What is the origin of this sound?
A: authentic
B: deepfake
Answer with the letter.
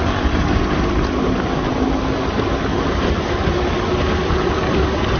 A